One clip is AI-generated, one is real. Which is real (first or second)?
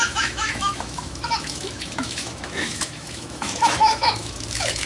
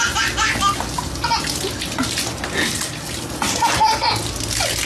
second